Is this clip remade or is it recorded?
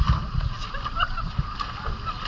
recorded